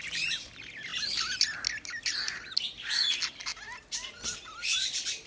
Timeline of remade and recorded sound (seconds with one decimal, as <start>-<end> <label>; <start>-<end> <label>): 0.0-5.3 recorded